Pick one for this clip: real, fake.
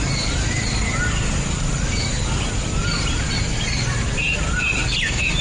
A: real